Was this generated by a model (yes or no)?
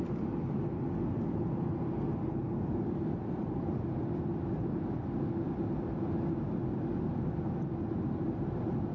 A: no